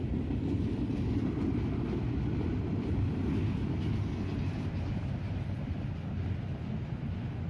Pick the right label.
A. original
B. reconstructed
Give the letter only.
A